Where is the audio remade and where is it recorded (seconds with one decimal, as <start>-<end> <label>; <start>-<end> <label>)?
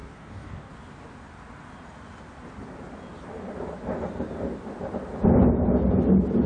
0.0-0.7 remade; 0.7-6.5 recorded